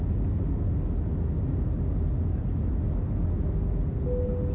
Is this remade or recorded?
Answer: recorded